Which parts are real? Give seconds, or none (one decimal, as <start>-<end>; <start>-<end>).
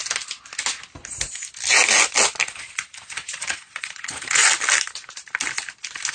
0.0-2.5; 4.4-6.1